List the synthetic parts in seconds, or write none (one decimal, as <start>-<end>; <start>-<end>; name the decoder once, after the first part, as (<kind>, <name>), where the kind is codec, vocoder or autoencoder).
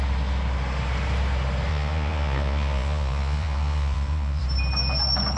1.7-4.4 (vocoder, Vocos)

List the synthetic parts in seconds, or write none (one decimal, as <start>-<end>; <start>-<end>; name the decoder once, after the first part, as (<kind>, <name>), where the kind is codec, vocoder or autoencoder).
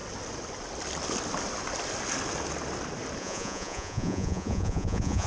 3.2-5.3 (vocoder, Vocos)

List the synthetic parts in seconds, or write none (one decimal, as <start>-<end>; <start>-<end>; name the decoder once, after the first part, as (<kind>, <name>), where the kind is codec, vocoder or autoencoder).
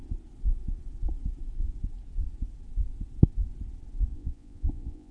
4.1-5.1 (vocoder, Vocos)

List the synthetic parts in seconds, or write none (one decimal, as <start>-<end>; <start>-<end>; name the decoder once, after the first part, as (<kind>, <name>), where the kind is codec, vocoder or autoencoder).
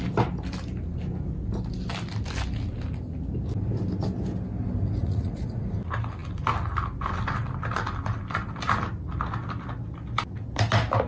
5.0-5.8 (vocoder, Vocos)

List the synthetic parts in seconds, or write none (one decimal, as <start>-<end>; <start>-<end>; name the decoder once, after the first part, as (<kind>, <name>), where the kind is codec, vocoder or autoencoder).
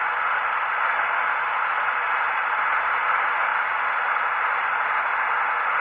none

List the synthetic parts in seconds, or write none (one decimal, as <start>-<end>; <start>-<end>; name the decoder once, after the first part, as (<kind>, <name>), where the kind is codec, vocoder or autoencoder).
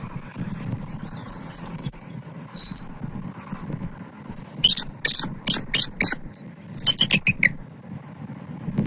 1.2-2.8 (vocoder, Vocos)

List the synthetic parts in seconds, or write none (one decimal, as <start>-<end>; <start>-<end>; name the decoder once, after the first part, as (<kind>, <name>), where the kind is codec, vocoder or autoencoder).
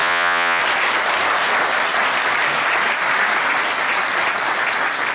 0.0-0.6 (vocoder, Vocos)